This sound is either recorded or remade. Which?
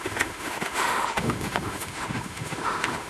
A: remade